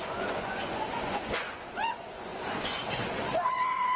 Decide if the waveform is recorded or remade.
remade